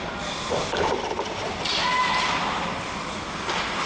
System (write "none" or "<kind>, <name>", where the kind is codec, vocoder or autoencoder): none